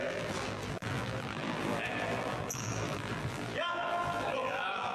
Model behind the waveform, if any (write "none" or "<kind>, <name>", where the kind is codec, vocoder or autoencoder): vocoder, BigVGAN v2